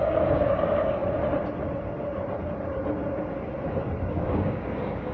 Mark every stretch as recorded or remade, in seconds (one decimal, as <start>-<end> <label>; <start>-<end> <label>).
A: 0.0-1.0 remade; 1.0-4.1 recorded; 4.1-5.1 remade